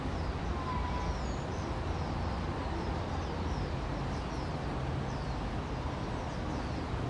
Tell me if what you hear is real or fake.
real